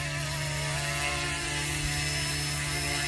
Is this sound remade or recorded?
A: recorded